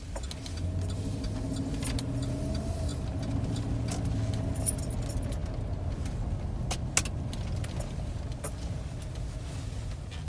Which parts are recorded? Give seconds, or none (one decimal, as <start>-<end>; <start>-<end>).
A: 0.0-10.3